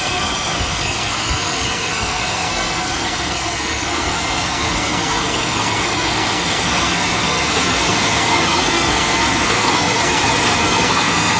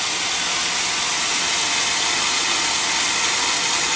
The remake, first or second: first